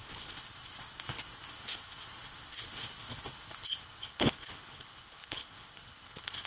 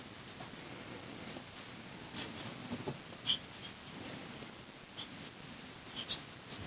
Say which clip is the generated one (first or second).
first